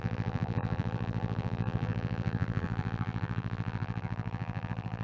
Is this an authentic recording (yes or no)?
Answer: no